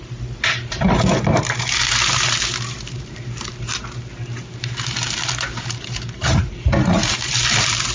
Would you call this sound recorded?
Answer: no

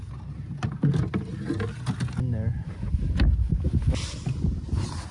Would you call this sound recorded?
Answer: yes